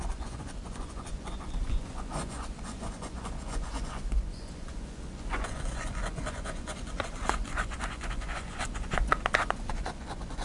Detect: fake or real fake